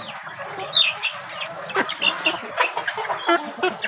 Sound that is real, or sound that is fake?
real